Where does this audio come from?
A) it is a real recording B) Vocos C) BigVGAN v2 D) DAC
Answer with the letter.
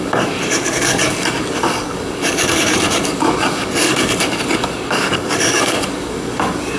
D